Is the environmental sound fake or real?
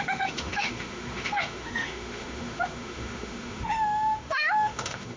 fake